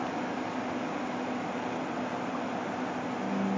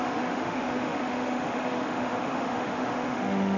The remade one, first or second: second